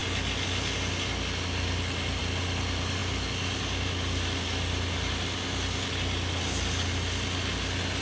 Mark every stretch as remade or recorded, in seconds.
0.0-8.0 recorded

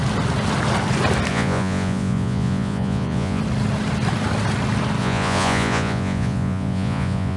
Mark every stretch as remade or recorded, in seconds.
0.0-1.3 recorded; 1.3-3.4 remade; 3.4-5.0 recorded; 5.0-7.4 remade

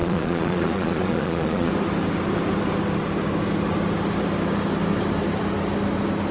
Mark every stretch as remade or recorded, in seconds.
0.0-1.7 remade; 1.7-6.3 recorded

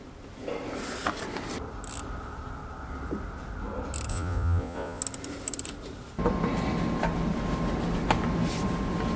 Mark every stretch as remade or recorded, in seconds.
0.0-4.1 recorded; 4.1-5.0 remade; 5.0-9.2 recorded

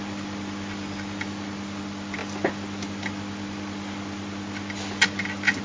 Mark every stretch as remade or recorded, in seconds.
0.0-5.6 recorded